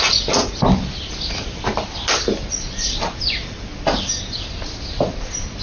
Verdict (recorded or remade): recorded